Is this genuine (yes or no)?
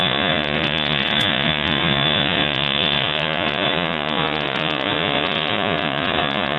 no